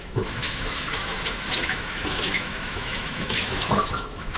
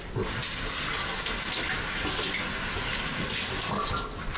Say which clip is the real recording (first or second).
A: second